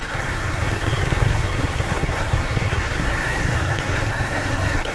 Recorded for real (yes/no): no